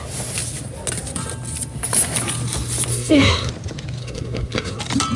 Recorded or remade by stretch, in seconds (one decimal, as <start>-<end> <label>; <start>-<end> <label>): 0.0-2.9 recorded; 2.9-3.5 remade; 3.5-4.0 recorded; 4.0-4.8 remade; 4.8-5.2 recorded